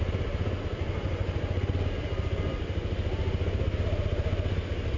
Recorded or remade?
recorded